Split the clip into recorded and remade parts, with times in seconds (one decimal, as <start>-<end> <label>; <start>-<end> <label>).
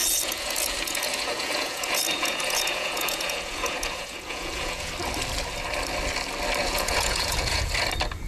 0.0-4.9 remade; 4.9-6.6 recorded; 6.6-7.7 remade; 7.7-8.3 recorded